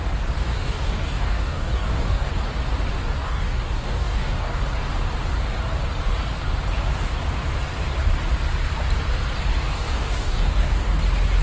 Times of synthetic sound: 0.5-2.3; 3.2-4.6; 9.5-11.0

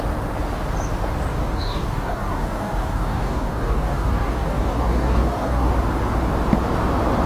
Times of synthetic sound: 1.3-5.7